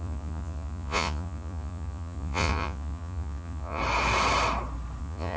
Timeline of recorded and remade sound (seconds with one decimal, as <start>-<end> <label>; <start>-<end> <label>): 0.0-3.8 remade; 3.8-5.0 recorded; 5.0-5.4 remade